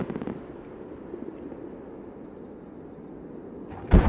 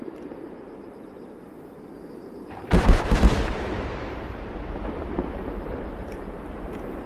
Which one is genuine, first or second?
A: first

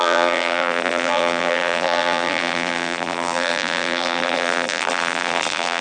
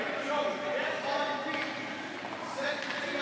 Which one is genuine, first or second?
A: second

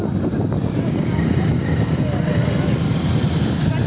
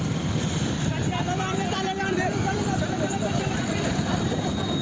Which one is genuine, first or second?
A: first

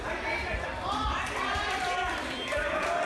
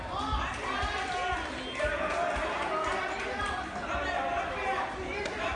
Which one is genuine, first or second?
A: second